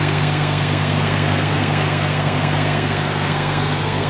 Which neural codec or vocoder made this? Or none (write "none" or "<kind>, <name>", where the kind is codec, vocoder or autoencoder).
codec, SNAC